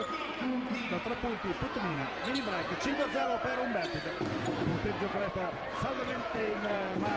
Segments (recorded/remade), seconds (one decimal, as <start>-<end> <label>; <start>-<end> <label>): 0.0-1.4 recorded; 1.4-3.3 remade; 3.3-4.7 recorded; 4.7-5.3 remade; 5.3-6.1 recorded; 6.1-7.2 remade